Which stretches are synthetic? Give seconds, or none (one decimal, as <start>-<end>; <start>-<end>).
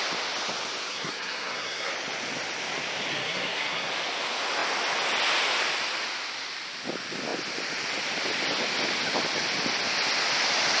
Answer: 0.9-1.9; 3.1-3.9